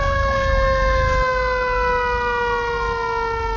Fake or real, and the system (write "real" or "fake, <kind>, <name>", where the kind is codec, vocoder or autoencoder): real